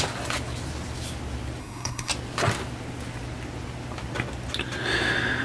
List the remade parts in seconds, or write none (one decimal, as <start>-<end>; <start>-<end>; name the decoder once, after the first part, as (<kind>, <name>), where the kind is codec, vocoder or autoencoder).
1.6-2.1 (codec, SNAC)